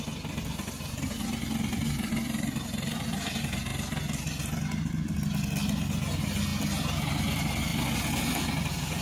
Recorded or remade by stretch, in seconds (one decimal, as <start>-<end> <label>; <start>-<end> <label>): 0.0-9.0 recorded